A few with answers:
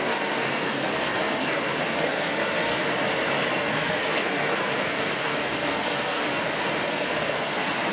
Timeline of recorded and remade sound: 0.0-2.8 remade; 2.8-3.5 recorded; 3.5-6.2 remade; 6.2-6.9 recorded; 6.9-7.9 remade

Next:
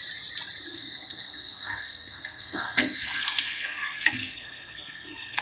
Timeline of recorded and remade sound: 0.0-0.7 recorded; 0.7-5.4 remade

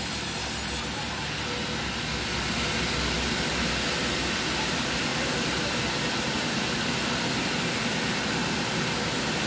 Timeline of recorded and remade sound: 0.0-9.5 recorded

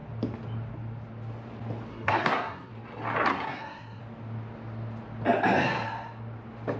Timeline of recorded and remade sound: 0.0-1.9 recorded; 1.9-2.7 remade; 2.7-3.3 recorded; 3.3-4.0 remade; 4.0-6.8 recorded